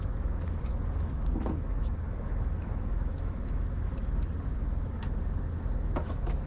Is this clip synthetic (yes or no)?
yes